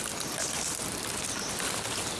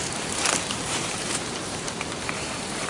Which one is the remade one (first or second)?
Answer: second